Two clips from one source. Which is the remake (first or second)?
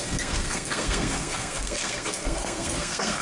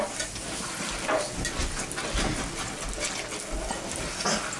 first